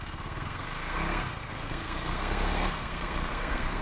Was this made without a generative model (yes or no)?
no